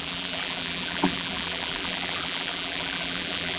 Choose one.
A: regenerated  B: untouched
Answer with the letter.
A